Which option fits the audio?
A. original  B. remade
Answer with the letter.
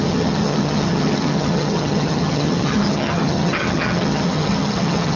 B